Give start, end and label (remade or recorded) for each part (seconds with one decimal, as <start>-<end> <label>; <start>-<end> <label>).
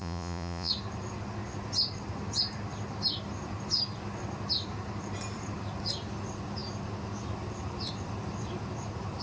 0.0-0.7 remade; 0.7-9.2 recorded